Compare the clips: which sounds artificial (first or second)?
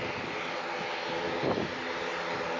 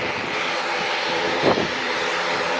second